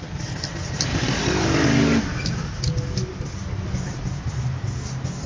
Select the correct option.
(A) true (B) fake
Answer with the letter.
A